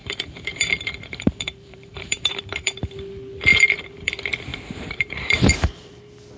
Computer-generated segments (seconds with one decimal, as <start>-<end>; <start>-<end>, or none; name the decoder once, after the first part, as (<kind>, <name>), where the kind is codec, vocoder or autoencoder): 0.0-2.9 (vocoder, BigVGAN v2); 3.5-4.1; 4.5-6.0